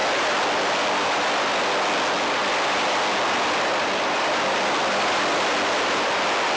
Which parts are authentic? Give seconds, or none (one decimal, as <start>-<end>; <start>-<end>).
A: 0.0-6.6